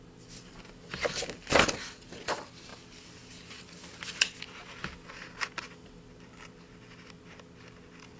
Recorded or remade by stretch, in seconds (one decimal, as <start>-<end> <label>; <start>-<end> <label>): 0.0-8.2 recorded